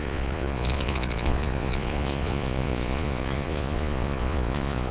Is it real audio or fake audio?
fake